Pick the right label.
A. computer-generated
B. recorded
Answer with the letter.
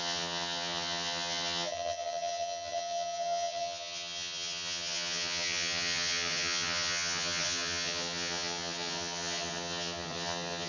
A